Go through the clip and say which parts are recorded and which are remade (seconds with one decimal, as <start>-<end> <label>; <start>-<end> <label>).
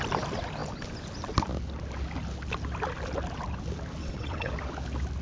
0.0-4.0 recorded; 4.0-4.5 remade; 4.5-5.2 recorded